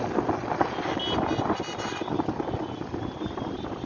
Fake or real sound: real